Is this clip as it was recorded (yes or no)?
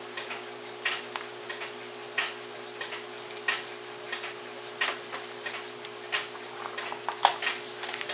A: yes